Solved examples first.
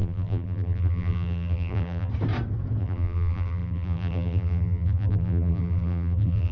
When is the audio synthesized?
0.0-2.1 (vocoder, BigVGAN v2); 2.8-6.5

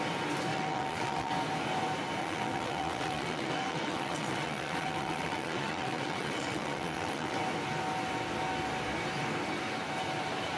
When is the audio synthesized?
0.5-1.3 (vocoder, WaveNeXt); 2.2-7.4

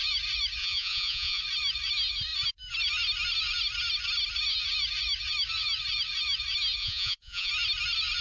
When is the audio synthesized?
0.6-1.4 (vocoder, Vocos); 6.8-7.5

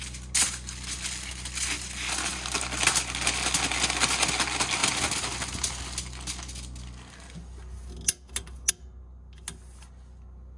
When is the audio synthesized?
none

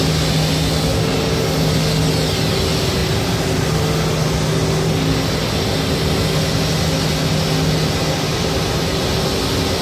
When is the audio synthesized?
3.0-3.8 (vocoder, BigVGAN v2); 8.3-9.0